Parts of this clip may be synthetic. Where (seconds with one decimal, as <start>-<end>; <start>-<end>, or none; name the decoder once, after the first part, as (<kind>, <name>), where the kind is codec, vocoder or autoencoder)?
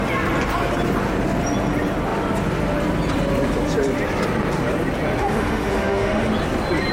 5.2-6.3 (autoencoder, DAC-VAE)